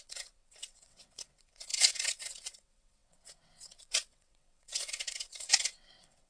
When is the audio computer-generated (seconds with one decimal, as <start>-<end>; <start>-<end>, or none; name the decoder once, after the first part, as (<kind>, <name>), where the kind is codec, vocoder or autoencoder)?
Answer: 0.0-6.3 (vocoder, WaveNeXt)